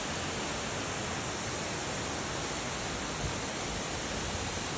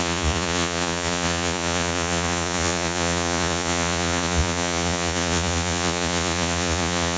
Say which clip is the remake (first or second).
second